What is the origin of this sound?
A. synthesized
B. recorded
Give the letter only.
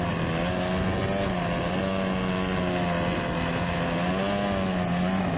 B